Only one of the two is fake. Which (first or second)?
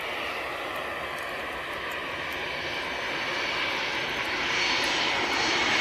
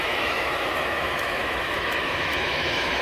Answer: second